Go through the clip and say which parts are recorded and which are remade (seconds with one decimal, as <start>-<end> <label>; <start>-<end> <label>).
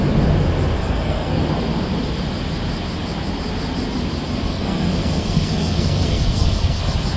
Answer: 0.0-0.8 recorded; 0.8-1.4 remade; 1.4-4.5 recorded; 4.5-6.8 remade; 6.8-7.2 recorded